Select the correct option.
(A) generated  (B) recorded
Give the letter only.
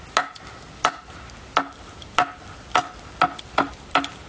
B